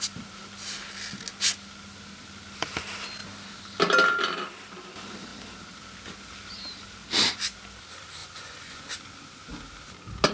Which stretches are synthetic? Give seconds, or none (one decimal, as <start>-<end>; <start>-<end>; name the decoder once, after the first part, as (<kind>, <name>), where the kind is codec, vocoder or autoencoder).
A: 8.2-8.9 (vocoder, Vocos)